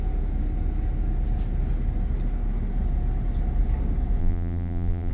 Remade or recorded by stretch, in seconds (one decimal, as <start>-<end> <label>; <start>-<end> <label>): 0.0-4.2 recorded; 4.2-5.1 remade